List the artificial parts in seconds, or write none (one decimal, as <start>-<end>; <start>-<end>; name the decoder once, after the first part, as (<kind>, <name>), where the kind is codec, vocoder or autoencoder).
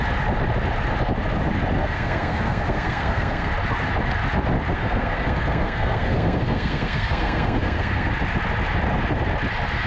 1.8-3.5 (codec, SNAC); 4.7-8.1